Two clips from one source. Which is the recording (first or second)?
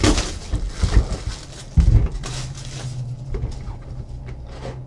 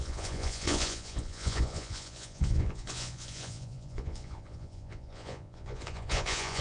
first